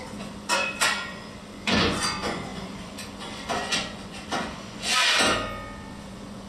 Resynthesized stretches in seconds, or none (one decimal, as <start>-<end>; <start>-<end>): 0.0-5.0; 5.9-6.5